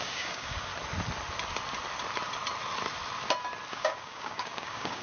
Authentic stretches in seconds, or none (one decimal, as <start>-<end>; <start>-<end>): 0.7-3.7